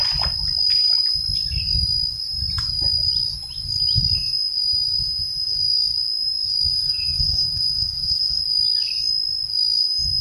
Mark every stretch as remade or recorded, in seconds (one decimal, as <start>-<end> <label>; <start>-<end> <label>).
0.0-6.7 recorded; 6.7-8.4 remade; 8.4-10.2 recorded